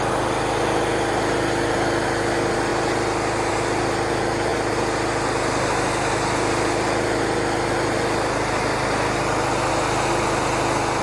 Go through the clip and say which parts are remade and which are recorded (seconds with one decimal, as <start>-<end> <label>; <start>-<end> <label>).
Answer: 0.0-11.0 recorded

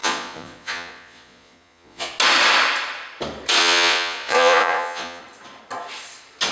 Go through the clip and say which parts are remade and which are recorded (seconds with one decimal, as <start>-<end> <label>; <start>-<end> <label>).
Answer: 0.0-2.1 remade; 2.1-3.6 recorded; 3.6-5.2 remade; 5.2-6.5 recorded